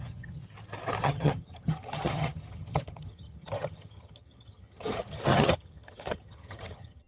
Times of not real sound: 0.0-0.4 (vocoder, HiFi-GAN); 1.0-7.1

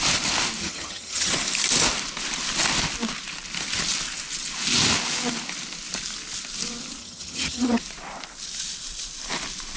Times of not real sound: 0.6-1.3 (vocoder, HiFi-GAN); 7.0-7.8

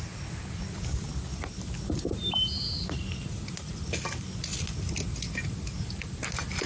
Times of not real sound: none

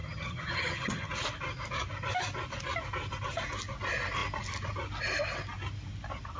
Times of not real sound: 0.0-1.1 (vocoder, HiFi-GAN)

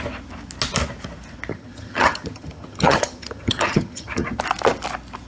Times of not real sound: 1.5-4.4 (vocoder, HiFi-GAN)